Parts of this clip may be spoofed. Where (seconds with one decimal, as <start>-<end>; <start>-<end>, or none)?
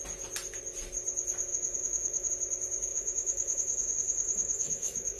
1.5-2.3; 2.9-5.2